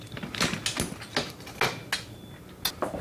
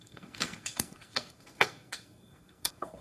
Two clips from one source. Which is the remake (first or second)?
second